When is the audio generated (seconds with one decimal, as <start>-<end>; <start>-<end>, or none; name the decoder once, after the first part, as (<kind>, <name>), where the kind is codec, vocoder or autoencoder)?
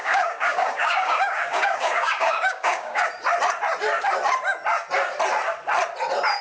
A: 0.0-3.0 (codec, DAC)